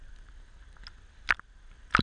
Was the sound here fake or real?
real